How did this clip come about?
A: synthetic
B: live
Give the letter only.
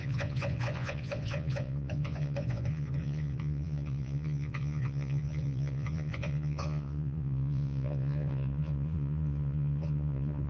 A